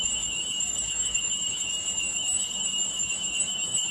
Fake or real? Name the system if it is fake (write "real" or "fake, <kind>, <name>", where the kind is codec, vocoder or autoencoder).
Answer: fake, autoencoder, DAC-VAE